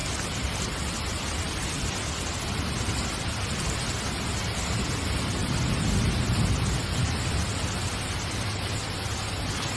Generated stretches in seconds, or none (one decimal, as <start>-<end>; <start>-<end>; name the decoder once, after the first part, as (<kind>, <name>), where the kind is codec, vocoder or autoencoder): none